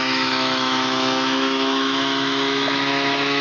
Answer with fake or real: fake